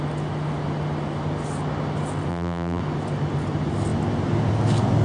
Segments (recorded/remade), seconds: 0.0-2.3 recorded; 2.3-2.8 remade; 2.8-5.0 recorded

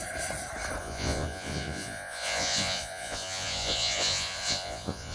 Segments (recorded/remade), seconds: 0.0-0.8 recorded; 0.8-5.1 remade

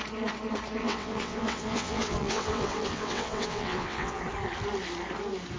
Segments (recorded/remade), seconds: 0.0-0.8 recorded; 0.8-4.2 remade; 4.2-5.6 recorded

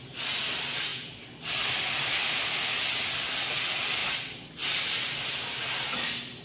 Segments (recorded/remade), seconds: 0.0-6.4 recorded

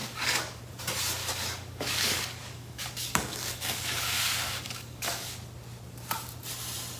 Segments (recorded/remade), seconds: 0.0-0.6 remade; 0.6-1.2 recorded; 1.2-5.4 remade; 5.4-7.0 recorded

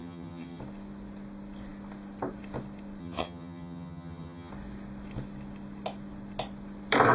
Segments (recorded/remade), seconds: 0.0-0.6 remade; 0.6-3.0 recorded; 3.0-4.5 remade; 4.5-7.1 recorded

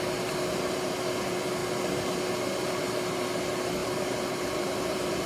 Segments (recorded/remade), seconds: 0.0-3.8 recorded; 3.8-5.3 remade

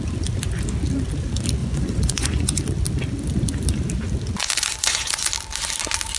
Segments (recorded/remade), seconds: 0.0-1.6 recorded; 1.6-2.6 remade; 2.6-4.4 recorded; 4.4-5.3 remade; 5.3-6.2 recorded